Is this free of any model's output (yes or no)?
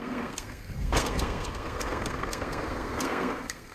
no